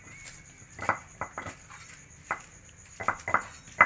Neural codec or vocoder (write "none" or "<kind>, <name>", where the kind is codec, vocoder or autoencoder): none